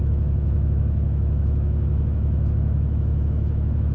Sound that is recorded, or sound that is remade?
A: remade